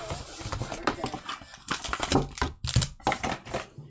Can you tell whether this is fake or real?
real